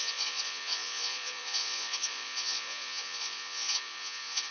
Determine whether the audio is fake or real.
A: fake